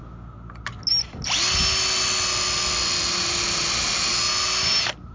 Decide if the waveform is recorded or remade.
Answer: recorded